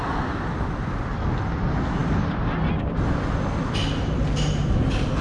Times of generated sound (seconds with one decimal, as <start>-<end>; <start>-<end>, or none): none